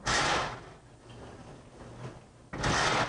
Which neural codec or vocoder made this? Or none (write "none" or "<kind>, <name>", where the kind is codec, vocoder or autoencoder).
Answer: none